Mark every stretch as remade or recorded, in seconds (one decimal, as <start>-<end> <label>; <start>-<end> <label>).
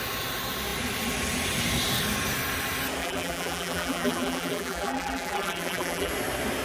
0.0-3.0 recorded; 3.0-6.1 remade; 6.1-6.6 recorded